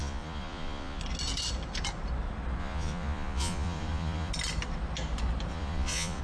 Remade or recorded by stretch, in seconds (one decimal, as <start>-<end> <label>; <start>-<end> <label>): 0.0-1.0 remade; 1.0-2.6 recorded; 2.6-4.3 remade; 4.3-5.5 recorded; 5.5-6.2 remade